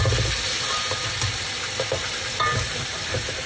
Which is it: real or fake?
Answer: real